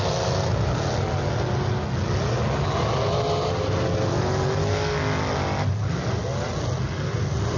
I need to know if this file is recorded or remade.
recorded